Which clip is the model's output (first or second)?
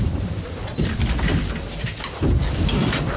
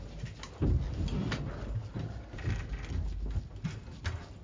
first